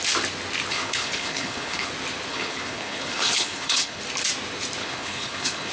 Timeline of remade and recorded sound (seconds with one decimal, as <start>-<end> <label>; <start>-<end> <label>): 0.0-0.7 recorded; 0.7-1.9 remade; 1.9-2.3 recorded; 2.3-4.0 remade; 4.0-4.8 recorded; 4.8-5.7 remade